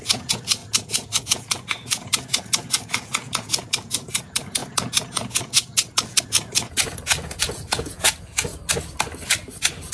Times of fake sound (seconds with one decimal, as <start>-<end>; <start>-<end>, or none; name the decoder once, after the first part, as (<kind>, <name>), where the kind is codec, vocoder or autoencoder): 0.0-8.5 (vocoder, Vocos)